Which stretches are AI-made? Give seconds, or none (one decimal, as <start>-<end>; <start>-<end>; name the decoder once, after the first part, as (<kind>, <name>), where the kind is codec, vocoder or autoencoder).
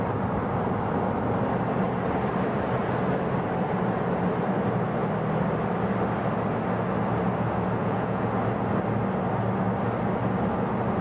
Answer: 7.8-8.3 (vocoder, Vocos)